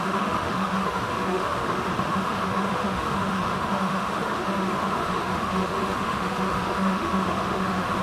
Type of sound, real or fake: fake